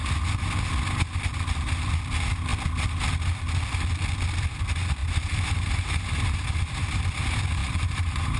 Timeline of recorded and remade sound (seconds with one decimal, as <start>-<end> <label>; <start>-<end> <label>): 0.0-5.0 recorded; 5.0-7.0 remade; 7.0-7.6 recorded; 7.6-8.4 remade

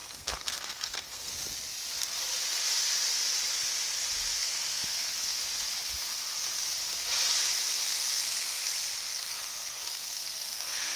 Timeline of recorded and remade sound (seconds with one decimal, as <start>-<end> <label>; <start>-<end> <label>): 0.0-1.3 remade; 1.3-4.4 recorded; 4.4-5.4 remade; 5.4-7.8 recorded; 7.8-8.6 remade; 8.6-9.1 recorded; 9.1-11.0 remade

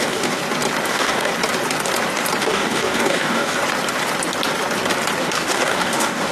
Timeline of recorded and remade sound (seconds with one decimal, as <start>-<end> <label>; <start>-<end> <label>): 0.0-0.4 remade; 0.4-0.9 recorded; 0.9-1.3 remade; 1.3-2.4 recorded; 2.4-3.6 remade; 3.6-5.2 recorded; 5.2-6.3 remade

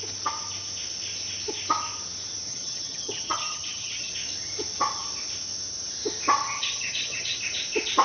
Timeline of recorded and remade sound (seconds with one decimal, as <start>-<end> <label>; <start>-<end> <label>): 0.0-2.5 recorded; 2.5-4.1 remade; 4.1-6.4 recorded; 6.4-7.4 remade; 7.4-8.0 recorded